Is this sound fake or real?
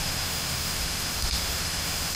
fake